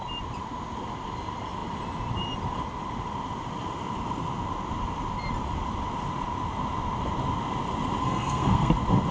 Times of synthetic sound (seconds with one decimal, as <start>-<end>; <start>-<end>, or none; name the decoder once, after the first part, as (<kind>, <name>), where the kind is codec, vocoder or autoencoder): 8.0-8.7 (codec, SNAC)